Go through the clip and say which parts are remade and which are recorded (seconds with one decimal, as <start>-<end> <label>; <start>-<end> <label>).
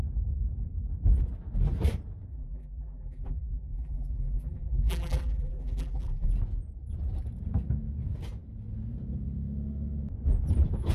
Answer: 0.0-2.3 recorded; 2.3-6.3 remade; 6.3-10.9 recorded